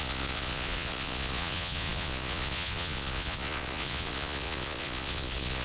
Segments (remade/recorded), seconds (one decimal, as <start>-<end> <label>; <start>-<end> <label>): 0.0-5.6 remade

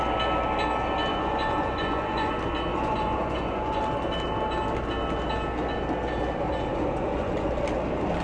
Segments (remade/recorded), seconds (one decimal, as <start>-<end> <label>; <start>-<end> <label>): 0.0-1.1 recorded; 1.1-2.3 remade; 2.3-2.7 recorded; 2.7-3.8 remade; 3.8-6.7 recorded; 6.7-7.5 remade; 7.5-8.2 recorded

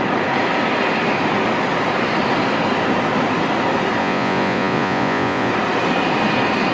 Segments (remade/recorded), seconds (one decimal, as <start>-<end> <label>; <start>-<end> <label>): 0.0-4.0 recorded; 4.0-5.5 remade; 5.5-6.7 recorded

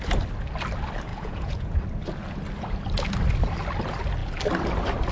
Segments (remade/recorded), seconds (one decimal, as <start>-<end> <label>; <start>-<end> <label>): 0.0-1.1 recorded; 1.1-1.7 remade; 1.7-5.1 recorded

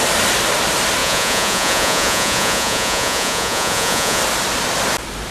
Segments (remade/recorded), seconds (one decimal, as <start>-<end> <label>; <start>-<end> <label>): 0.0-1.0 recorded; 1.0-4.2 remade; 4.2-5.3 recorded